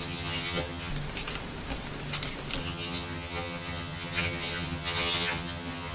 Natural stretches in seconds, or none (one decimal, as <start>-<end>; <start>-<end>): 0.9-2.6